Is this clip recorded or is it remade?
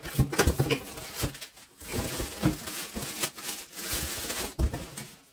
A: recorded